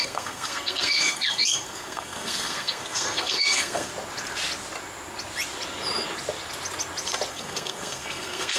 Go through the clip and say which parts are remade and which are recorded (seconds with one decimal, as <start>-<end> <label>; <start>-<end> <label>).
0.0-3.9 remade; 3.9-7.3 recorded; 7.3-8.6 remade